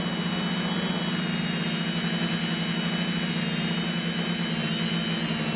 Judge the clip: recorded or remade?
recorded